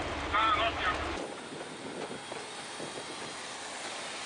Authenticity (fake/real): real